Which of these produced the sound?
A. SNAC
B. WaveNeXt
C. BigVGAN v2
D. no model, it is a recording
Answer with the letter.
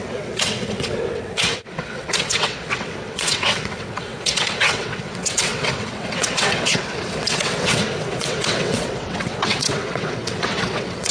B